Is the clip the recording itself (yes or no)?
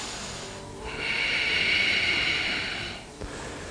yes